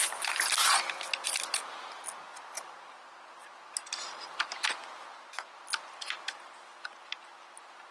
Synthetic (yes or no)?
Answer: no